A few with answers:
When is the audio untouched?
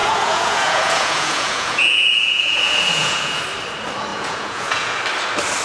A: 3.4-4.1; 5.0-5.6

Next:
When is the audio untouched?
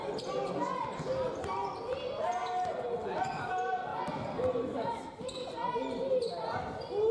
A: 0.0-7.1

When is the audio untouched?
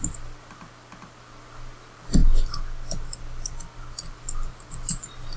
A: 0.0-5.4